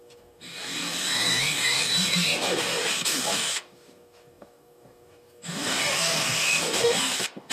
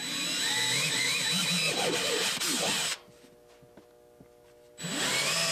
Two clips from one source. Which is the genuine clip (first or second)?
second